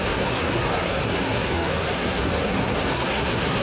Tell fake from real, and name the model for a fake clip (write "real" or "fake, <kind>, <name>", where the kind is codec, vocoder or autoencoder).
fake, codec, SNAC